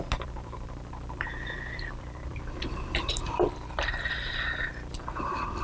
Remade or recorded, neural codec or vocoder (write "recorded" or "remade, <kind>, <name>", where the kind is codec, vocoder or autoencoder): remade, vocoder, BigVGAN v2